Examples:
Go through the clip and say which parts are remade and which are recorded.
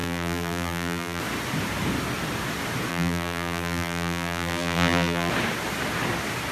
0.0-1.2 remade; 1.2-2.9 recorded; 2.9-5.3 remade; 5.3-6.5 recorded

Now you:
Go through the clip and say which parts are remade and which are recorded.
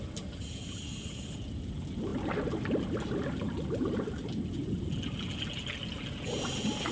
0.0-6.9 recorded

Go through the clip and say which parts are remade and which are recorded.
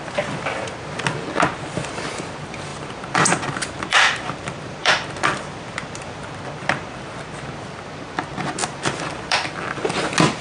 0.0-2.7 recorded; 2.7-7.0 remade; 7.0-8.6 recorded; 8.6-9.5 remade; 9.5-10.4 recorded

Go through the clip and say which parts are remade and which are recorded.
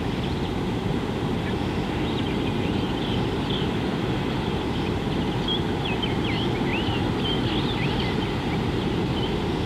0.0-3.9 recorded; 3.9-5.0 remade; 5.0-9.7 recorded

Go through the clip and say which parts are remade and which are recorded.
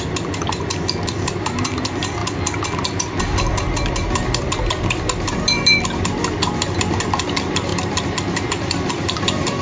0.0-2.2 remade; 2.2-3.0 recorded; 3.0-7.7 remade; 7.7-8.4 recorded; 8.4-9.6 remade